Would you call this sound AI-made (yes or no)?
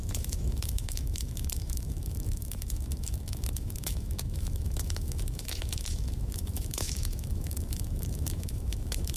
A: yes